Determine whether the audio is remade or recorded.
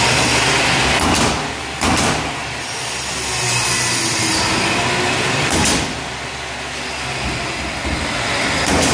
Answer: recorded